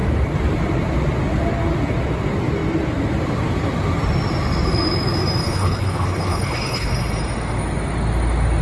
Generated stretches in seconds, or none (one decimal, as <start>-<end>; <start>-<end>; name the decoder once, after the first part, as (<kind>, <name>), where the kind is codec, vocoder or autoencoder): 5.4-6.9 (codec, HILCodec)